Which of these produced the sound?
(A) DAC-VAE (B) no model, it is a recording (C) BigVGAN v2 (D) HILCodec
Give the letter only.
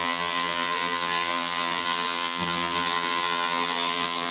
C